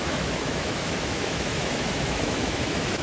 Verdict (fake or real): fake